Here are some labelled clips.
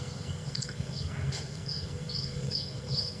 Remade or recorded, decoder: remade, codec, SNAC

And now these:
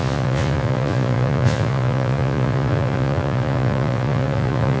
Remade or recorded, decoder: remade, vocoder, Vocos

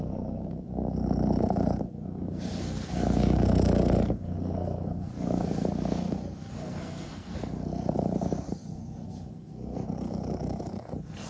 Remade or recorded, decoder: remade, codec, SNAC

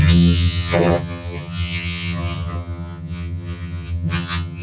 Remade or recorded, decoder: remade, vocoder, HiFi-GAN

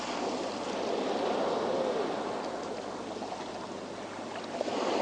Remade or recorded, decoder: recorded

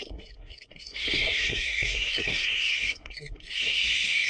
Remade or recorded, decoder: remade, codec, SNAC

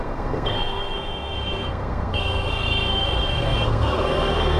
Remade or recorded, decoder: remade, codec, SNAC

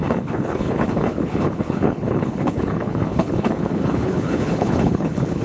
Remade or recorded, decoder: remade, codec, HILCodec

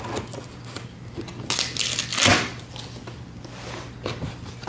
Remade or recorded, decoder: recorded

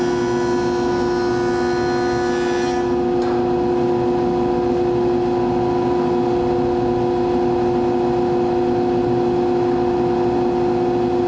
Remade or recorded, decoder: recorded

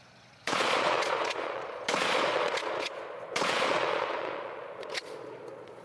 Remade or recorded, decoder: remade, vocoder, Vocos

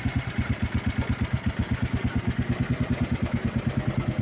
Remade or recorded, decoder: recorded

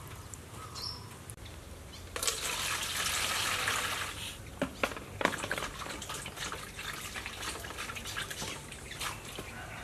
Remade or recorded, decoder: recorded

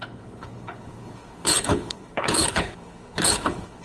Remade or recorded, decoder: remade, codec, HILCodec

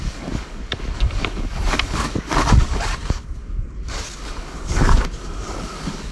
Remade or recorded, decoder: remade, codec, DAC